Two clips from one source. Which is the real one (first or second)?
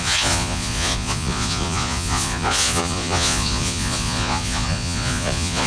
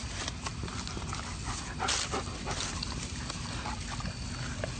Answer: second